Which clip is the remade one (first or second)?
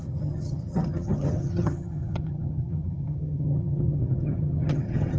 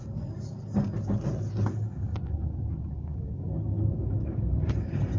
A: first